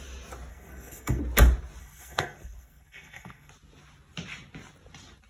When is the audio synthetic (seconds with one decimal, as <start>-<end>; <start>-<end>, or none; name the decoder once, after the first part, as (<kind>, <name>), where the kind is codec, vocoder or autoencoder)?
0.5-1.2 (codec, SNAC); 1.8-3.5